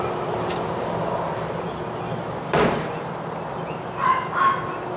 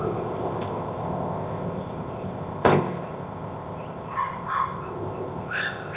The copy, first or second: second